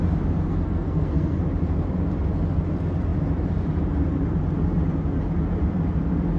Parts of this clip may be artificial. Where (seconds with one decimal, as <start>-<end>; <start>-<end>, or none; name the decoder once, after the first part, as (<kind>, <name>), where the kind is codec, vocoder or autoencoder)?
0.5-1.4 (codec, SNAC)